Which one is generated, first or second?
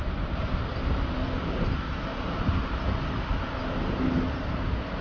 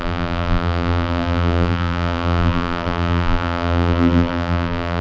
second